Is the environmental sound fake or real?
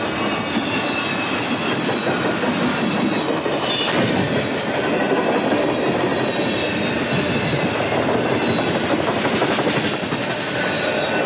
real